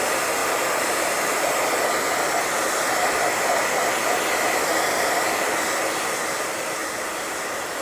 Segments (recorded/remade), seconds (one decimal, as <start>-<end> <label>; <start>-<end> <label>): 0.0-0.4 recorded; 0.4-1.7 remade; 1.7-6.8 recorded; 6.8-7.8 remade